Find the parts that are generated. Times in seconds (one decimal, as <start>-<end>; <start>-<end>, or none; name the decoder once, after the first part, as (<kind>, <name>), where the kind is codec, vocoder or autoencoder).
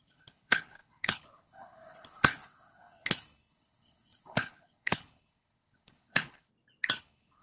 0.0-6.5 (codec, HILCodec); 7.0-7.4